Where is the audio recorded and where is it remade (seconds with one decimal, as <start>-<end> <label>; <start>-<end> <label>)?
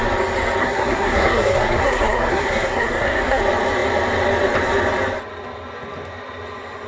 0.0-0.6 recorded; 0.6-3.4 remade; 3.4-6.9 recorded